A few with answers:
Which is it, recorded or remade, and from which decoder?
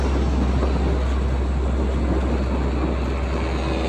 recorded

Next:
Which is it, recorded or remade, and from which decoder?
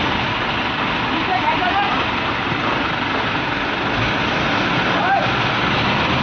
recorded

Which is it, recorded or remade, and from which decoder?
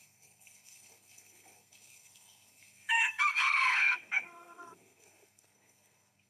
remade, codec, SNAC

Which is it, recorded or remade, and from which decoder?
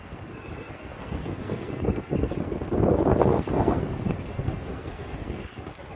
remade, codec, SNAC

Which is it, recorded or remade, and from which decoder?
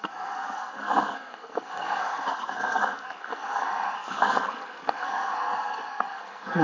remade, codec, SNAC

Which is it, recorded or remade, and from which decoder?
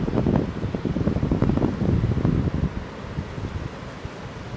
recorded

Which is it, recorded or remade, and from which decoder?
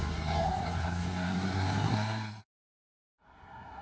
remade, codec, SNAC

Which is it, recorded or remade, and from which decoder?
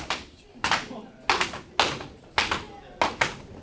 recorded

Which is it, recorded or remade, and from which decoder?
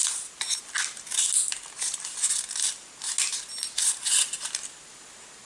recorded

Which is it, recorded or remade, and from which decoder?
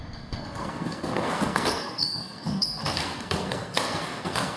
remade, codec, SNAC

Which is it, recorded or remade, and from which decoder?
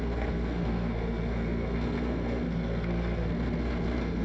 remade, codec, SNAC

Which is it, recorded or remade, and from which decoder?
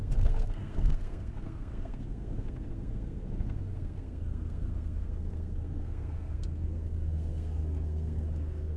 remade, codec, SNAC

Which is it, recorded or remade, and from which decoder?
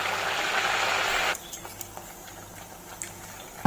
recorded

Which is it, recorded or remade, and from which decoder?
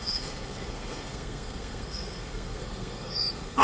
remade, codec, SNAC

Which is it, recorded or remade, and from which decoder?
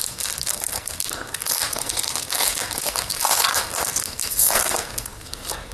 remade, codec, SNAC